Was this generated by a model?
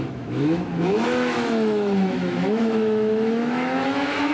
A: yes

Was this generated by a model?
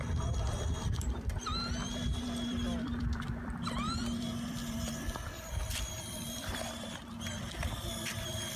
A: yes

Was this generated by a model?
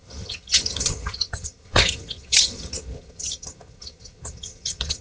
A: yes